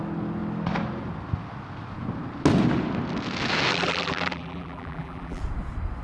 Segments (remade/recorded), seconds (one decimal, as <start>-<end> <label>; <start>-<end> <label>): 0.0-3.7 recorded; 3.7-5.4 remade; 5.4-6.0 recorded